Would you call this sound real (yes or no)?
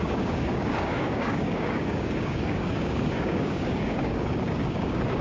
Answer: no